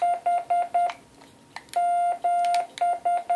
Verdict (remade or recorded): recorded